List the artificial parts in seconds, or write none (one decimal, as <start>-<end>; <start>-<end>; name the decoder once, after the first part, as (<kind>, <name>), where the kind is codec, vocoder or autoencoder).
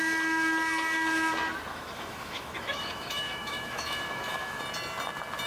1.7-4.6 (autoencoder, DAC-VAE)